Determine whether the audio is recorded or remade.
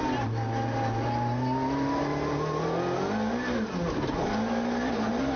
recorded